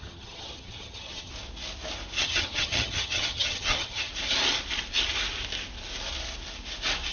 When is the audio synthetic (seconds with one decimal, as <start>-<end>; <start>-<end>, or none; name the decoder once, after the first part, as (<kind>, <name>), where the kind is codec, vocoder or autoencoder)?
0.0-1.3 (vocoder, HiFi-GAN); 2.2-4.1

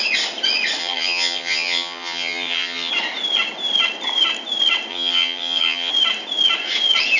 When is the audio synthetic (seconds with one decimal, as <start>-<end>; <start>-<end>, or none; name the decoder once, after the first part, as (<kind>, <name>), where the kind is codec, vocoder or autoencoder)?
0.8-2.9 (vocoder, HiFi-GAN); 4.9-5.9

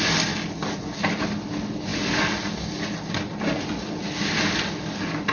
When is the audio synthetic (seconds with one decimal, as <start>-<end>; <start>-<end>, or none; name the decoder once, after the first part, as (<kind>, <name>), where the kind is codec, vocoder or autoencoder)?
none

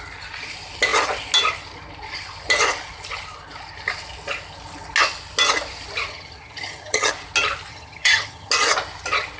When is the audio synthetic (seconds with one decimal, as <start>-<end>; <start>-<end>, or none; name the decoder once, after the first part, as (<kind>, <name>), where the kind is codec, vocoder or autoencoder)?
6.1-7.1 (vocoder, HiFi-GAN); 7.7-8.5